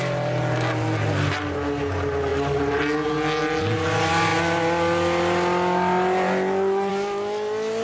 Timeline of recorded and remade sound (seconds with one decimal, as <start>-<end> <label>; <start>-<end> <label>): 0.0-7.8 recorded